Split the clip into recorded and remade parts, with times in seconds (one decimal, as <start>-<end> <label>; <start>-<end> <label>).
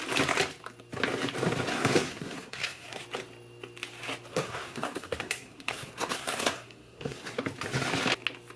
0.0-1.7 recorded; 1.7-3.0 remade; 3.0-4.3 recorded; 4.3-7.4 remade; 7.4-8.6 recorded